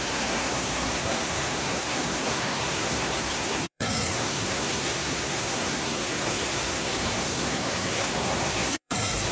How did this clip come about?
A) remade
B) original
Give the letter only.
A